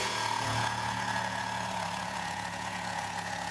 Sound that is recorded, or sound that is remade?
remade